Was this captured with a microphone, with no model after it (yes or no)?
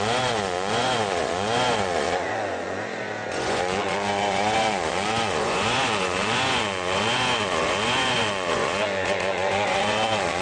no